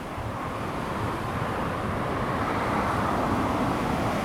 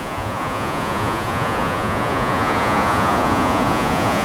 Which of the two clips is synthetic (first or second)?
second